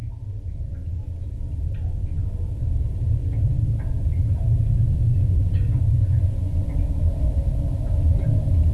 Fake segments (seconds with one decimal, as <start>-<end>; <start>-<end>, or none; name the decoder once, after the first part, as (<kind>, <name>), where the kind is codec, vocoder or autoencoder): 5.1-6.7 (vocoder, Vocos)